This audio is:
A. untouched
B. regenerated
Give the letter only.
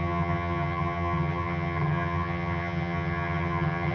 B